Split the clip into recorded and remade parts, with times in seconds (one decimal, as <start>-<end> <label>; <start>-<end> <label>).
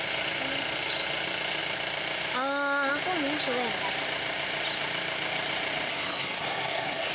0.0-5.9 recorded; 5.9-7.1 remade